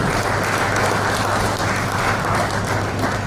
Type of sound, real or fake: real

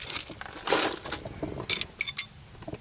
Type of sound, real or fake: real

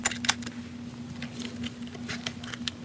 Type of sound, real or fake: real